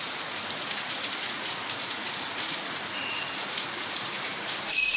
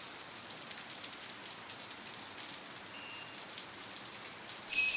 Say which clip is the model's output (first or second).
first